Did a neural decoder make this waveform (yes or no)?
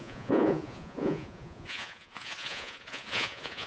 yes